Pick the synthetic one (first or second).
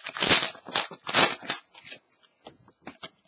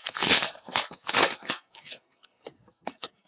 second